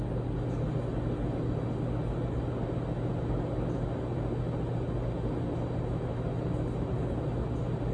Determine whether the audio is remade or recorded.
recorded